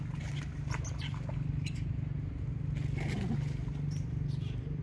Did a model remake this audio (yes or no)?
no